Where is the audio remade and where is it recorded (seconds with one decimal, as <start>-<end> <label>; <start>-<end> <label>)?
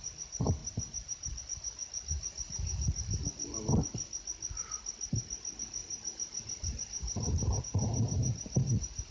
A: 0.0-0.6 recorded; 0.6-1.4 remade; 1.4-5.8 recorded; 5.8-7.6 remade; 7.6-9.1 recorded